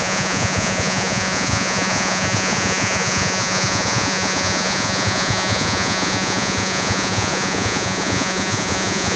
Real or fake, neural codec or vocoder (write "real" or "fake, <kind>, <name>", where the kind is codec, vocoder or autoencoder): fake, vocoder, Vocos